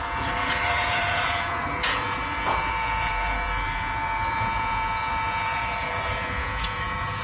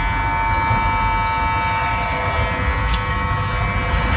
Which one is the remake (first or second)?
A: first